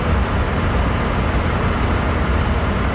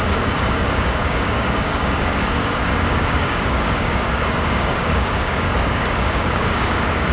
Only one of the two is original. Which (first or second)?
first